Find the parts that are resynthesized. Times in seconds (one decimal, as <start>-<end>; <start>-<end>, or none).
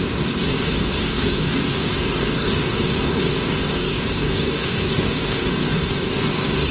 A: 0.0-6.7